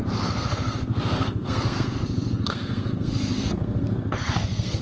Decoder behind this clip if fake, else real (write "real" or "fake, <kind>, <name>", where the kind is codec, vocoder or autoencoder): fake, codec, SNAC